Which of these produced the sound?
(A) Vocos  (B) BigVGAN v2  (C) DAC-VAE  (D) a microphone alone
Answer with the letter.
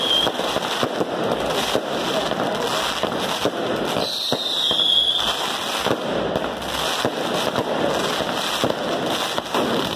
D